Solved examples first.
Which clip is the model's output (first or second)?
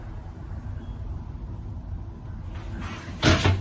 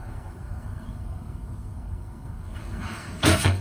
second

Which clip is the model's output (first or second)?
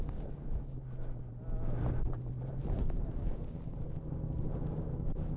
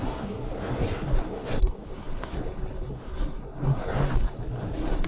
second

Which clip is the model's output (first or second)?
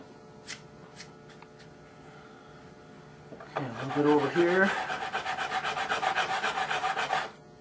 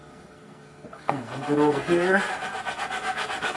second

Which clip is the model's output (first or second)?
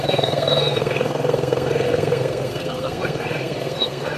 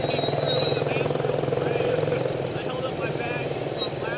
first